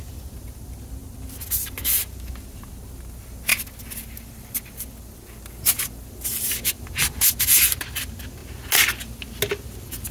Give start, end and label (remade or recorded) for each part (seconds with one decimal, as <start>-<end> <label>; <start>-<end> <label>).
0.0-10.1 recorded